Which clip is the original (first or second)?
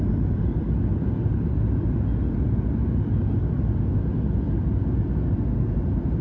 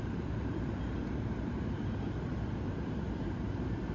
first